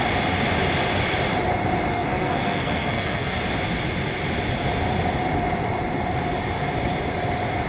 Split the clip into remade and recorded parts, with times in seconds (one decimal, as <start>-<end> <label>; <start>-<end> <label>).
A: 0.0-1.9 recorded; 1.9-3.4 remade; 3.4-7.7 recorded